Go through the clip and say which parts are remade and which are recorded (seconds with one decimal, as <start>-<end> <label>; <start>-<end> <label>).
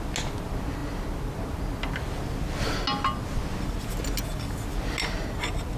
0.0-5.8 recorded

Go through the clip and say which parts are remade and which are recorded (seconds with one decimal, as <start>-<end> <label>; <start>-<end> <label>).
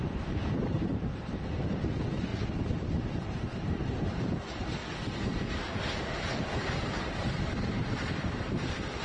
0.0-2.3 remade; 2.3-3.1 recorded; 3.1-4.8 remade; 4.8-6.0 recorded; 6.0-9.0 remade